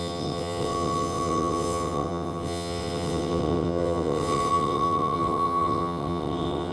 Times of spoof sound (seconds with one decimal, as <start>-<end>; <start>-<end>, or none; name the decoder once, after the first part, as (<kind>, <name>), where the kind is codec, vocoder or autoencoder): 0.0-6.7 (vocoder, WaveNeXt)